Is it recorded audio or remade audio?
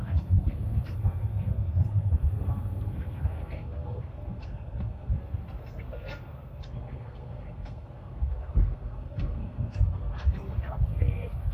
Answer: remade